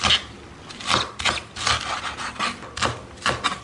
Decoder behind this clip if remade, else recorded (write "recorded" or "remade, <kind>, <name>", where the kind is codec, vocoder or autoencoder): recorded